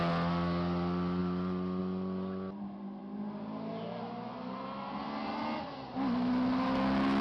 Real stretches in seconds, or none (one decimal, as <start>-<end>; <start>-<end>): 0.0-7.2